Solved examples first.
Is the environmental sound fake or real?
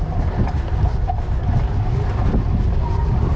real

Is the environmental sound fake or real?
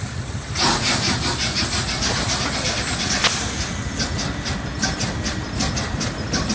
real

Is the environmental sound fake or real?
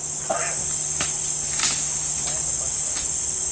real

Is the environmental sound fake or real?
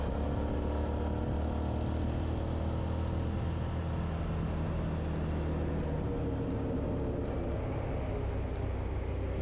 real